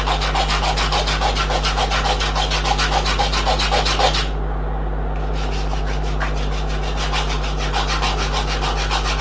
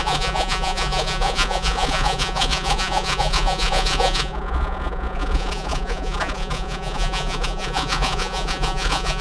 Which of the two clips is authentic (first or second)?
first